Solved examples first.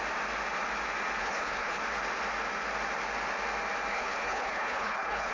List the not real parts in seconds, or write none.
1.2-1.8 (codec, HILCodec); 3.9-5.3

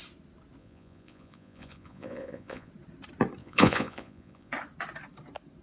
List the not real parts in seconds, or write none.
0.6-2.7 (vocoder, Vocos); 3.4-4.5

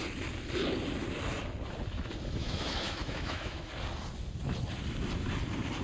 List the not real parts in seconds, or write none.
2.4-3.7 (autoencoder, DAC-VAE)

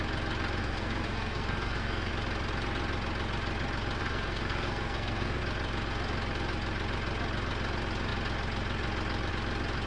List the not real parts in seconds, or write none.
0.6-2.1 (codec, SNAC); 4.0-5.4

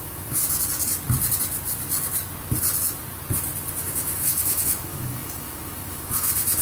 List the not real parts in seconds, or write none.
0.0-0.4 (autoencoder, DAC-VAE); 3.8-6.6

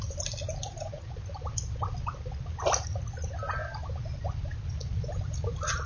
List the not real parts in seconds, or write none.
0.0-4.9 (vocoder, BigVGAN v2); 5.5-5.9

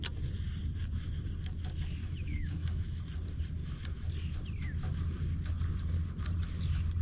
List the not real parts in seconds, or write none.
2.0-3.0 (autoencoder, DAC-VAE)

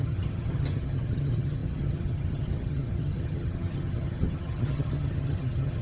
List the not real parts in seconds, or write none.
0.0-5.8 (vocoder, HiFi-GAN)